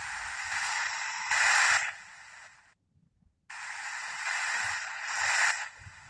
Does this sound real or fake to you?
real